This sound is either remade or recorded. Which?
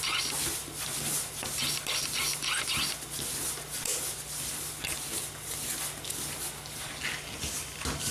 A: recorded